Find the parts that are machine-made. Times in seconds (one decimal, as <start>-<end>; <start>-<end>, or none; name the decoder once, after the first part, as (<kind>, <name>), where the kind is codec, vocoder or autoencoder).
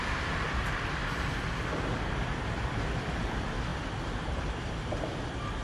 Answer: 0.0-1.0 (vocoder, BigVGAN v2); 3.2-5.6